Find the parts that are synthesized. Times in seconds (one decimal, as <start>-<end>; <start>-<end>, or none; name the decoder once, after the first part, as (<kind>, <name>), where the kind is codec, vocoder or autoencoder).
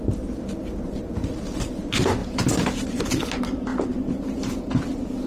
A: 2.2-3.0 (vocoder, BigVGAN v2); 3.7-5.3